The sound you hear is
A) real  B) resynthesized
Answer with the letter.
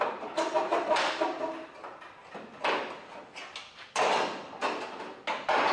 A